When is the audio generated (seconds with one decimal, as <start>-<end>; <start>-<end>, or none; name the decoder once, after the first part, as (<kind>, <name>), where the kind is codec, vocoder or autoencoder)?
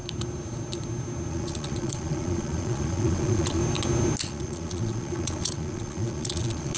1.3-3.6 (vocoder, Vocos); 4.2-6.8